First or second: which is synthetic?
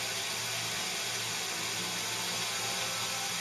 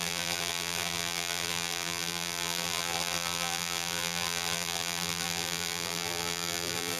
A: second